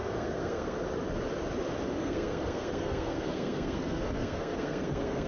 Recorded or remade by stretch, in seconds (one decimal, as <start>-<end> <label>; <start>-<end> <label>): 0.0-0.8 remade; 0.8-2.0 recorded; 2.0-5.3 remade